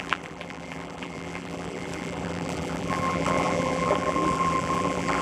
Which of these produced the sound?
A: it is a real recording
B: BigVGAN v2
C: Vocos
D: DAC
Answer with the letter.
B